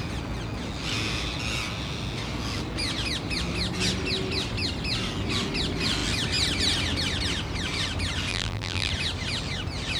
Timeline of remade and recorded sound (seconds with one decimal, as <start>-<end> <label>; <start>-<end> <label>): 0.0-8.3 recorded; 8.3-8.9 remade; 8.9-10.0 recorded